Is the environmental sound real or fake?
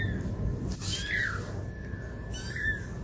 real